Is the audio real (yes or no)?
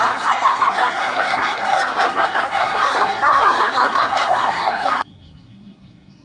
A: no